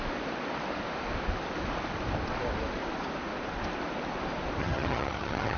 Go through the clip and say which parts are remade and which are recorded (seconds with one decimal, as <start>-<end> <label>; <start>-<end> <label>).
0.0-4.6 recorded; 4.6-5.6 remade